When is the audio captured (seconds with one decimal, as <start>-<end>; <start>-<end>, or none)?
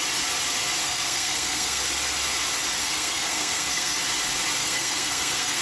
0.0-0.8; 1.8-2.8; 4.0-4.6